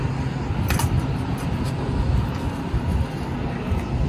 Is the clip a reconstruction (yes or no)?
no